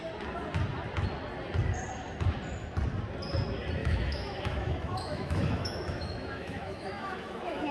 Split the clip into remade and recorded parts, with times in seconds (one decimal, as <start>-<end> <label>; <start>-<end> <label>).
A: 0.0-3.8 recorded; 3.8-7.7 remade